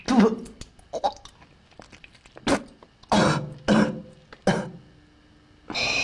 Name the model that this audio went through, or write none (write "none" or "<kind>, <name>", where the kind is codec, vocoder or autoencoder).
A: none